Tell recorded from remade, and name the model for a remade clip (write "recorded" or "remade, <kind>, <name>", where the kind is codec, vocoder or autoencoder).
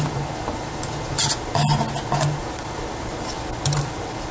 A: recorded